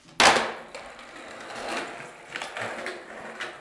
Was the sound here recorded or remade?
recorded